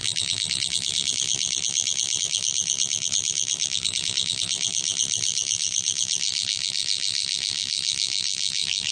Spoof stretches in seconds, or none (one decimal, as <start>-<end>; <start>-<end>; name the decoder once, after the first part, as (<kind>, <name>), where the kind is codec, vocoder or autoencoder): 0.0-8.9 (vocoder, BigVGAN v2)